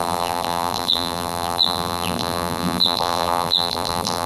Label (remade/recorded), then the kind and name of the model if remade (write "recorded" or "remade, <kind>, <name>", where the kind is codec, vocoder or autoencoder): remade, vocoder, BigVGAN v2